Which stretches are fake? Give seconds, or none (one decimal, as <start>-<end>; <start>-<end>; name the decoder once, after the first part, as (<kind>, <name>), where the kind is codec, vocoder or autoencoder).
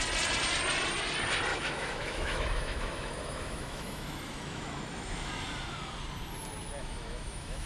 1.5-5.3 (autoencoder, DAC-VAE); 6.8-7.7